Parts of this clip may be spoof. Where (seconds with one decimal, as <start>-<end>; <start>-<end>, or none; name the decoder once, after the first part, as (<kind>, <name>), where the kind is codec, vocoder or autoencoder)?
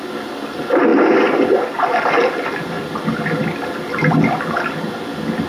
none